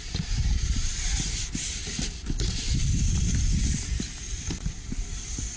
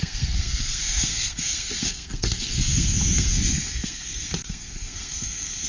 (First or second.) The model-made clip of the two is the second